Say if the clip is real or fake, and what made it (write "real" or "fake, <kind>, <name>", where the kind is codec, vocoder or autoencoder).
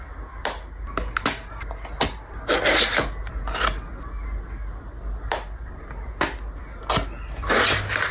real